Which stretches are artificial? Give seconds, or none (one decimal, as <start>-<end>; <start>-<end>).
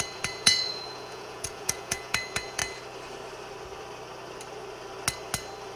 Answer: 0.0-2.6